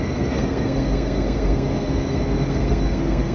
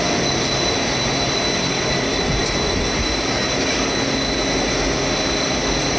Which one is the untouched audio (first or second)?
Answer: second